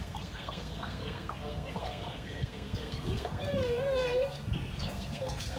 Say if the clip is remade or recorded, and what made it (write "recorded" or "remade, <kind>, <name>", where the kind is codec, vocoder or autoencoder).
remade, codec, SNAC